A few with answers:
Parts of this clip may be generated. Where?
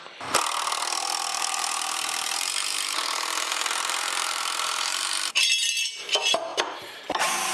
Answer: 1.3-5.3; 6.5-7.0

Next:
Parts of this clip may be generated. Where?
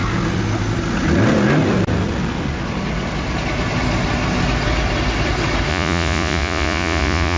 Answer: 5.7-7.4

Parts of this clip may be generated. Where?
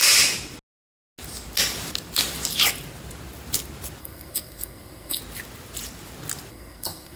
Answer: 4.0-5.2; 6.5-7.2